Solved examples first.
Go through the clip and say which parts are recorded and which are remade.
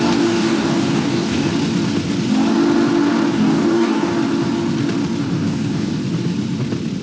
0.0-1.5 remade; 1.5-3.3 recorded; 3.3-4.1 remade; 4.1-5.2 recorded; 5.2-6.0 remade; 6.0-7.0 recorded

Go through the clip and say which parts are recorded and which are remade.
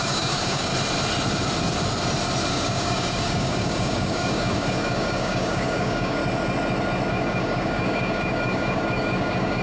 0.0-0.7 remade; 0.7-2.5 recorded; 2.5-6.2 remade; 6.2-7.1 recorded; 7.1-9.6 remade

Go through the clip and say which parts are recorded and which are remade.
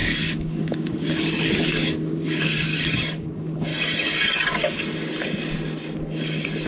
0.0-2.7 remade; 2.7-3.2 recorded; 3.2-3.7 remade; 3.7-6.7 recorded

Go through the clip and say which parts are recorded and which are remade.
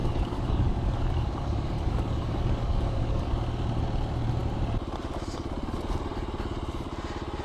0.0-3.3 remade; 3.3-7.4 recorded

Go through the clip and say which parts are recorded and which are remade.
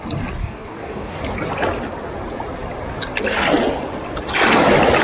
0.0-0.4 recorded; 0.4-1.2 remade; 1.2-5.0 recorded